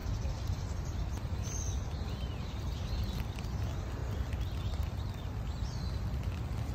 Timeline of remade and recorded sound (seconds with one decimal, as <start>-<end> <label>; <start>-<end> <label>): 0.0-3.5 remade; 3.5-4.0 recorded; 4.0-5.8 remade; 5.8-6.7 recorded

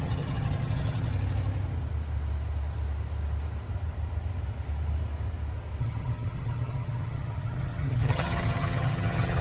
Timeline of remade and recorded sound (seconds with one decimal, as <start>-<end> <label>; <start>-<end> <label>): 0.0-1.1 remade; 1.1-5.8 recorded; 5.8-9.4 remade

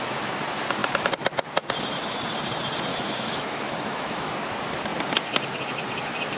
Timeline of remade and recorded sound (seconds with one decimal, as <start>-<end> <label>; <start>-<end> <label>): 0.0-2.9 recorded; 2.9-4.3 remade; 4.3-6.4 recorded

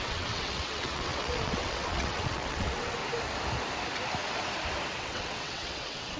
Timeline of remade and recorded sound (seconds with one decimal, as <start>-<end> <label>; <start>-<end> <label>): 0.0-3.0 remade; 3.0-5.0 recorded; 5.0-6.2 remade

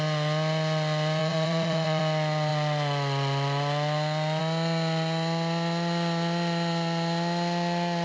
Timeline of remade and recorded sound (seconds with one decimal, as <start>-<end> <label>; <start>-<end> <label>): 0.0-1.2 recorded; 1.2-2.0 remade; 2.0-8.0 recorded

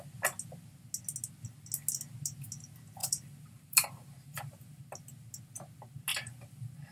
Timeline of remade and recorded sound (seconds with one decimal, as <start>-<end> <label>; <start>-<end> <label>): 0.0-3.0 recorded; 3.0-4.8 remade; 4.8-6.1 recorded; 6.1-6.9 remade